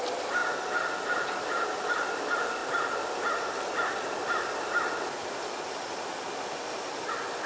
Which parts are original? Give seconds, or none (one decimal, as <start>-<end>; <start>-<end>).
0.0-7.5